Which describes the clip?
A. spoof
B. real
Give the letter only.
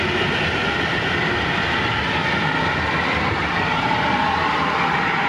B